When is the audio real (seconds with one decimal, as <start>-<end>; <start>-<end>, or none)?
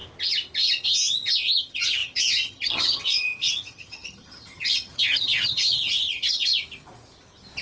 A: 0.0-1.6; 6.5-7.6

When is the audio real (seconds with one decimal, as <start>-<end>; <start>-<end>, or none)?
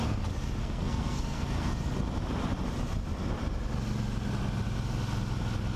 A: 0.0-0.6; 1.7-5.8